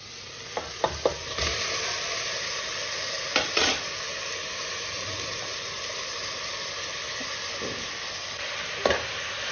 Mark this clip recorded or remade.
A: recorded